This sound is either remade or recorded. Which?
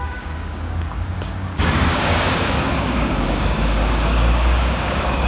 remade